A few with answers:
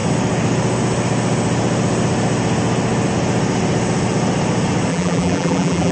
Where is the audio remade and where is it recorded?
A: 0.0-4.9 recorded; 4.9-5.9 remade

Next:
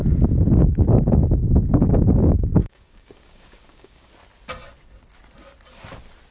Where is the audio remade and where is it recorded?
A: 0.0-0.6 recorded; 0.6-4.1 remade; 4.1-6.3 recorded

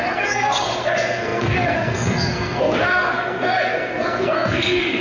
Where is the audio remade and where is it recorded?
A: 0.0-5.0 remade

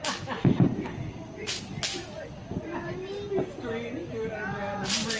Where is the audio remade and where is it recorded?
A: 0.0-5.2 recorded

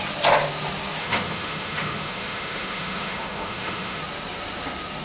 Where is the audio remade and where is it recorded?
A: 0.0-1.0 recorded; 1.0-4.0 remade; 4.0-5.0 recorded

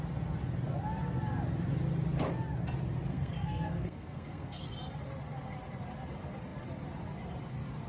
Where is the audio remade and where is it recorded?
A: 0.0-3.1 recorded; 3.1-4.7 remade; 4.7-7.9 recorded

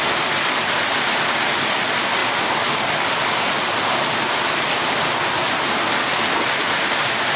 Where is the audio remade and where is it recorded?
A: 0.0-7.4 recorded